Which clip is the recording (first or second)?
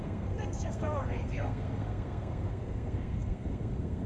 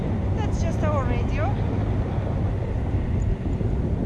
second